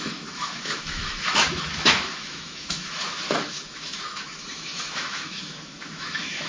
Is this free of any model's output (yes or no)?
no